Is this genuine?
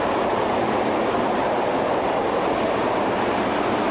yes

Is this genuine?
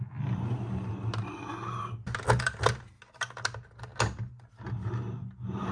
yes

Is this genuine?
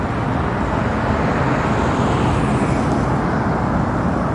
yes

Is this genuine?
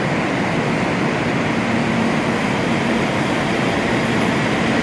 yes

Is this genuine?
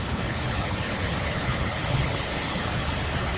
no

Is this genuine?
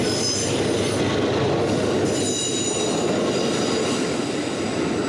yes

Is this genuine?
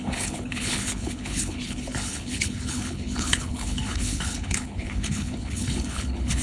no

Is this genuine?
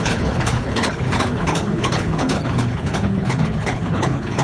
no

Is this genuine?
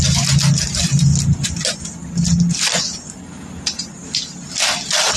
yes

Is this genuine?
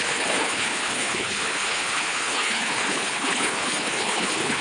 no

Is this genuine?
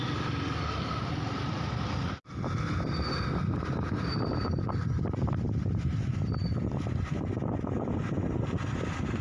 yes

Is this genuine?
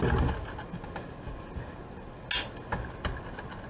yes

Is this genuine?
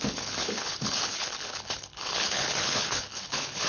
no